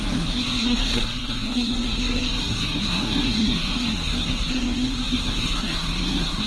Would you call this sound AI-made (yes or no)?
yes